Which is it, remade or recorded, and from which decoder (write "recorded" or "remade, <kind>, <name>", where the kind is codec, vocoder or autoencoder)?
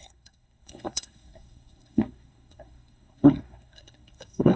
remade, codec, SNAC